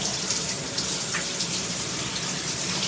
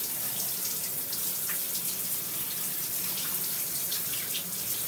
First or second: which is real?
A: second